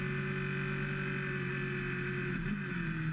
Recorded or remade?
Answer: recorded